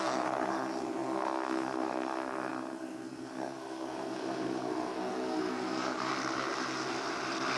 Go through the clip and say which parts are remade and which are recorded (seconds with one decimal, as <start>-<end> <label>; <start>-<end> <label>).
0.0-6.1 remade; 6.1-7.6 recorded